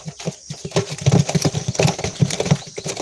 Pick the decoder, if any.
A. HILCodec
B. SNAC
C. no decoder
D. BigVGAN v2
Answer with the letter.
C